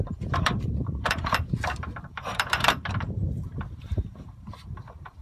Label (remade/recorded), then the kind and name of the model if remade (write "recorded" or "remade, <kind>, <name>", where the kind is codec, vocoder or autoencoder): remade, vocoder, BigVGAN v2